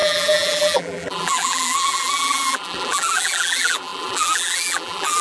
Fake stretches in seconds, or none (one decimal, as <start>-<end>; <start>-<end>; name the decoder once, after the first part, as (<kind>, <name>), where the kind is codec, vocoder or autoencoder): 0.0-5.2 (vocoder, BigVGAN v2)